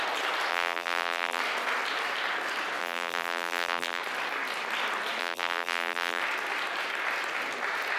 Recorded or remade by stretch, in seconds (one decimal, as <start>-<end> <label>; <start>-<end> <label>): 0.0-0.5 recorded; 0.5-1.4 remade; 1.4-2.8 recorded; 2.8-4.0 remade; 4.0-5.2 recorded; 5.2-6.2 remade; 6.2-8.0 recorded